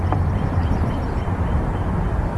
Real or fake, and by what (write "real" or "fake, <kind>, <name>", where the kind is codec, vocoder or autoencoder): fake, vocoder, BigVGAN v2